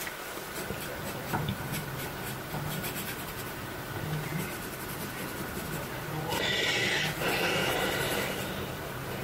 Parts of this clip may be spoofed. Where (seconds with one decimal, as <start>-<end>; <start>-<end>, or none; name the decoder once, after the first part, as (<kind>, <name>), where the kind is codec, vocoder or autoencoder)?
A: 0.0-4.3 (vocoder, BigVGAN v2)